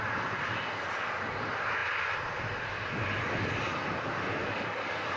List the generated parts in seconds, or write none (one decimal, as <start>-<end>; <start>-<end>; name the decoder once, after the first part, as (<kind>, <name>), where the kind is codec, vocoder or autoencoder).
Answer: 4.4-5.2 (codec, DAC)